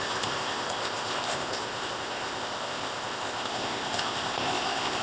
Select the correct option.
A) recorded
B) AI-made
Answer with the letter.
B